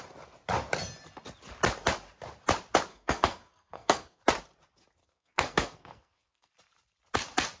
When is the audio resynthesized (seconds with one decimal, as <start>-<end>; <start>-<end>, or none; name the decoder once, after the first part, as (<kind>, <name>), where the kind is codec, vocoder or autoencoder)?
2.9-4.2 (codec, SNAC); 5.0-6.5